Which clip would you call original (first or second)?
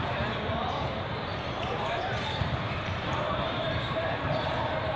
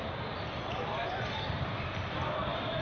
second